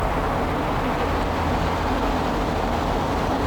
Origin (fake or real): real